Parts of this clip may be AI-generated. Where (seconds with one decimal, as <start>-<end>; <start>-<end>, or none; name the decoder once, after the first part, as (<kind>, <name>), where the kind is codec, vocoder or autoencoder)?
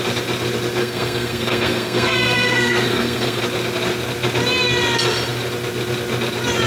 0.8-3.4 (codec, SNAC)